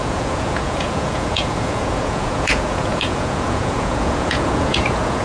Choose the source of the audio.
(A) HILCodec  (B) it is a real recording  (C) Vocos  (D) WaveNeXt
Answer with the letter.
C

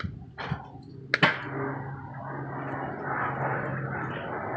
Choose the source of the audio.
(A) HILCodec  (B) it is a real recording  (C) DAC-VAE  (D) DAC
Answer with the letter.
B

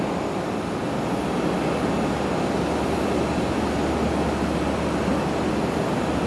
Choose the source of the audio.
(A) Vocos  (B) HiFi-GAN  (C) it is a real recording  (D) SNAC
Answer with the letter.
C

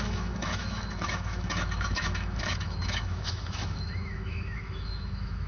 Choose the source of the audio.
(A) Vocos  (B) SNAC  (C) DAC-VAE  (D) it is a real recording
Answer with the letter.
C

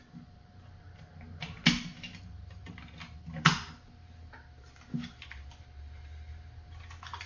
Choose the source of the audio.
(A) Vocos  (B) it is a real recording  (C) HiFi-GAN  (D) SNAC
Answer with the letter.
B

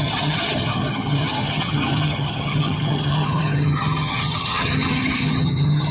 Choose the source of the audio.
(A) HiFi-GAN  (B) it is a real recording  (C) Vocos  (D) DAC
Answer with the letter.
A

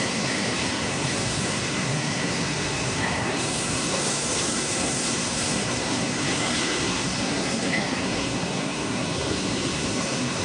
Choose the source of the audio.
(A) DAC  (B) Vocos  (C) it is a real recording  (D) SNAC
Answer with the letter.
D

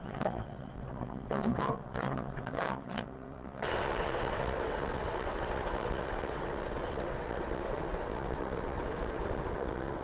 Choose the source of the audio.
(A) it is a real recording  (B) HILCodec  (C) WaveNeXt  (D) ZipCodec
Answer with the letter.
C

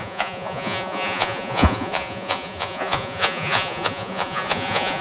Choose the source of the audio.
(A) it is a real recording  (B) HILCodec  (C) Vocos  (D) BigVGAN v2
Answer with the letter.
C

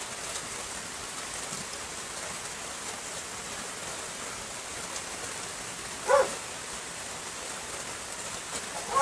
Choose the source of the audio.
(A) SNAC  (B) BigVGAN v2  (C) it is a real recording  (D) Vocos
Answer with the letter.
C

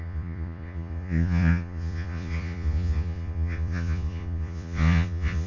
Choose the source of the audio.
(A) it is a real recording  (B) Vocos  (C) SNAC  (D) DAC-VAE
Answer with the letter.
B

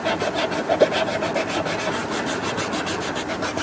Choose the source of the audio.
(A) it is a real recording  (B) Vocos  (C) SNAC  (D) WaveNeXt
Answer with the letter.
A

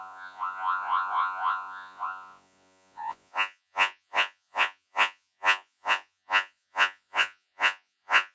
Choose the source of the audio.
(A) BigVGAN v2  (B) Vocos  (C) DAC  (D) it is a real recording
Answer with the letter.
B